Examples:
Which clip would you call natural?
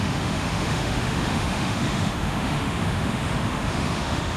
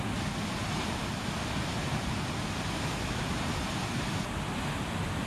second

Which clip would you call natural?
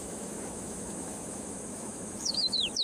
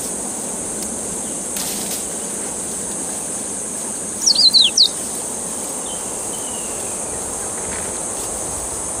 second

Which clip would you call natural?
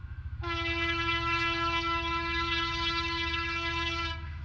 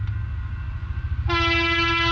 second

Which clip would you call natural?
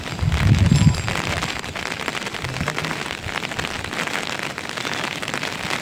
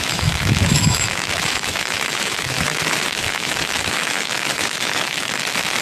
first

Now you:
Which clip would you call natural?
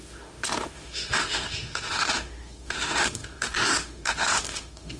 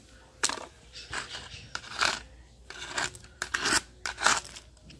second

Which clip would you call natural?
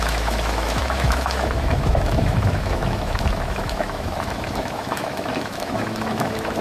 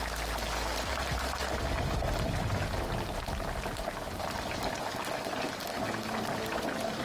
second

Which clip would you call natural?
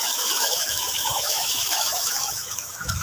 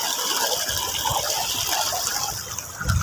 second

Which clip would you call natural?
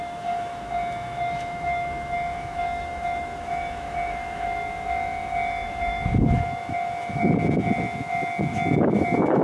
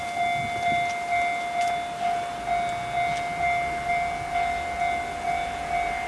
second